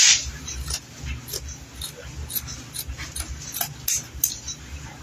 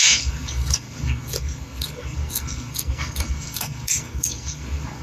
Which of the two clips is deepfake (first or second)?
second